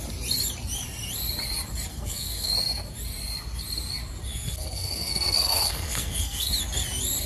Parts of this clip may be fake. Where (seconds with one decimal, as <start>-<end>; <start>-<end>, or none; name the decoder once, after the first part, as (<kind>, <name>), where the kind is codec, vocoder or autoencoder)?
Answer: 1.9-2.5 (codec, SNAC); 4.3-6.5